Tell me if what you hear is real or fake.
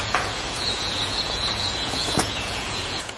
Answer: fake